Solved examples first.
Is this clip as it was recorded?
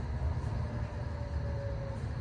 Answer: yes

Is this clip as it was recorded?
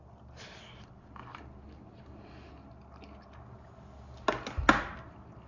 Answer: yes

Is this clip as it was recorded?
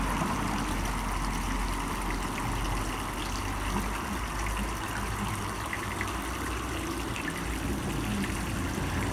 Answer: yes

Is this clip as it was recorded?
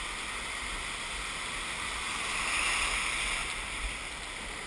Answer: yes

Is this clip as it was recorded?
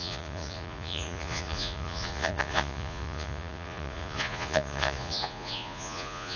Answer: no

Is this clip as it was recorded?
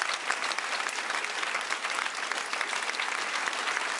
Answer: yes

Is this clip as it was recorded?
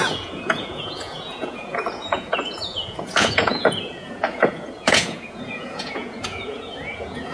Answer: no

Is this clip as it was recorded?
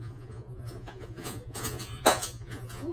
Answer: no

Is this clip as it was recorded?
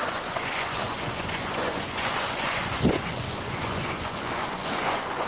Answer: no